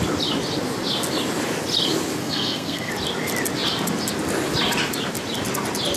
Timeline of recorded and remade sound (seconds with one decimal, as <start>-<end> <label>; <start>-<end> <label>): 0.0-2.2 recorded; 2.2-2.9 remade; 2.9-6.0 recorded